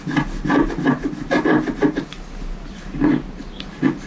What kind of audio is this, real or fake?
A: real